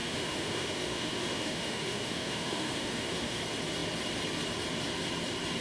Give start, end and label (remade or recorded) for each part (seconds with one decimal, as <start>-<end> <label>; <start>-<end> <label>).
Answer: 0.0-3.4 remade; 3.4-5.6 recorded